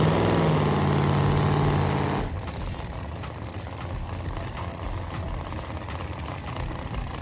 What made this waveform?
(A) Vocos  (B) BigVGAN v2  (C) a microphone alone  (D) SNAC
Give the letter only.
C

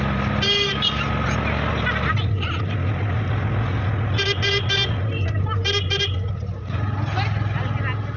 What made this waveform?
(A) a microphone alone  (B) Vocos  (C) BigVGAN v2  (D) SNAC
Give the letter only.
A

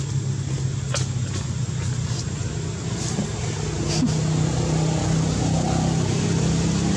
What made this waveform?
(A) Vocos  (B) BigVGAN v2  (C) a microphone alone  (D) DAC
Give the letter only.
C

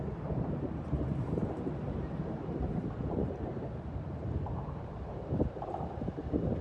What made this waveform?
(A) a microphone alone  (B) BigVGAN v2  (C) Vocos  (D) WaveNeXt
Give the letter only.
B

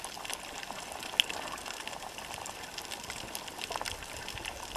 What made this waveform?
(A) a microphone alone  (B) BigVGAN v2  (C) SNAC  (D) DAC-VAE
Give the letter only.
A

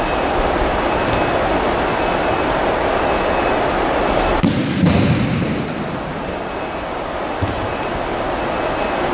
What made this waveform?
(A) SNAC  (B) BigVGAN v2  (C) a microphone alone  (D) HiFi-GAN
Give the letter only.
C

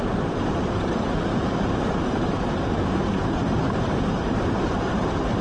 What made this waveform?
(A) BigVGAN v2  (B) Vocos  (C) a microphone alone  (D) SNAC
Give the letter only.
A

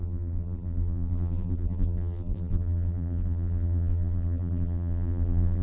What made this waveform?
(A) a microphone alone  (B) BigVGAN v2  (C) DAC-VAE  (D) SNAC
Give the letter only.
B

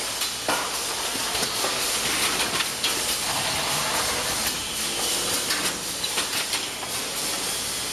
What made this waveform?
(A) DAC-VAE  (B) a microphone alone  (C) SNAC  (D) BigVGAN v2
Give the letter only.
B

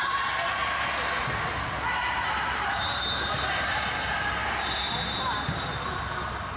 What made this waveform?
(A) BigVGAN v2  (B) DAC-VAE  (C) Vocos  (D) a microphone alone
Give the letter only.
D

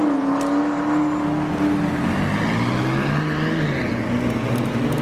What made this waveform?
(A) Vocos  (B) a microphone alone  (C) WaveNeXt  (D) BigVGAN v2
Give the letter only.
B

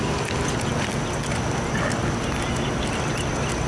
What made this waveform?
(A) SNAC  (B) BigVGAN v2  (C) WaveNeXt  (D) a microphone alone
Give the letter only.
D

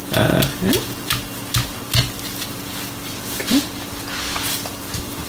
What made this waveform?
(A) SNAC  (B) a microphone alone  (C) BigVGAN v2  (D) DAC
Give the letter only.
B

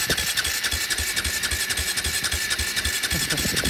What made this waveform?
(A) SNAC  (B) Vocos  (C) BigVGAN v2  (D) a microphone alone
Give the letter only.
D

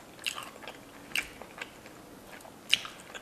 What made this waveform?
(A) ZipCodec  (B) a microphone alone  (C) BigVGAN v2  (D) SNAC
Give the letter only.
B